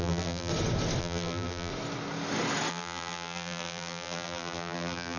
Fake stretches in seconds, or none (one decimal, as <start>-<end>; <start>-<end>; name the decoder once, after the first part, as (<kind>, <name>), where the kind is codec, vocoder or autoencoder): 0.0-0.5 (vocoder, BigVGAN v2); 1.0-1.7; 2.7-5.2